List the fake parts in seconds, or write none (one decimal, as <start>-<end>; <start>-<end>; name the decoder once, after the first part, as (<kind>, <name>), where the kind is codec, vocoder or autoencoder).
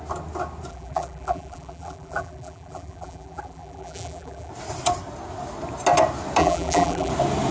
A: 0.7-4.5 (vocoder, BigVGAN v2); 6.4-7.1